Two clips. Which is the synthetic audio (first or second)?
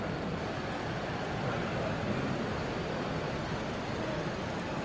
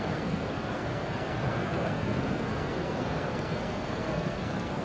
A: second